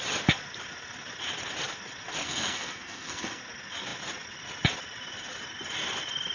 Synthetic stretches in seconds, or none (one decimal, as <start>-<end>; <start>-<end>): 2.2-3.4